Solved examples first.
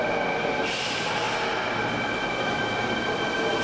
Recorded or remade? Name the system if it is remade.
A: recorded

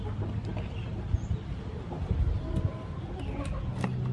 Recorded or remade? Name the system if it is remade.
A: recorded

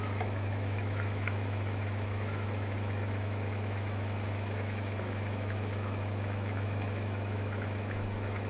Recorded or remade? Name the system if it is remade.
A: remade, autoencoder, DAC-VAE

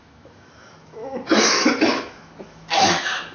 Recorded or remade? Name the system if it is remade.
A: remade, autoencoder, DAC-VAE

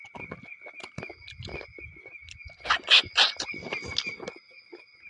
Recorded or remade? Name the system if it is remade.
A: recorded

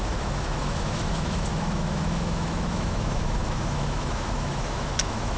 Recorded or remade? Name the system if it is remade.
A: remade, autoencoder, DAC-VAE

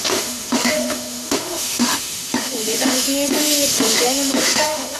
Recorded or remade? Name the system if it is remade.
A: remade, autoencoder, DAC-VAE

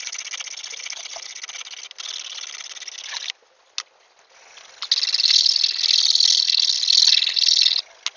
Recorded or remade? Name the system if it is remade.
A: recorded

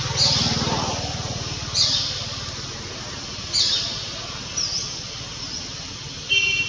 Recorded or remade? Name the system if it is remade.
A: recorded